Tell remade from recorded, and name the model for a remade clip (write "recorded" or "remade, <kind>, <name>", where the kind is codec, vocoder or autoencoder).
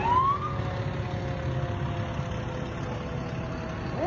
recorded